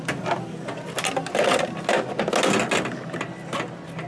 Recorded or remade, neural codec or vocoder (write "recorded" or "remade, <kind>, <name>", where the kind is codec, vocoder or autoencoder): recorded